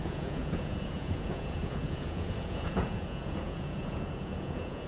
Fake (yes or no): yes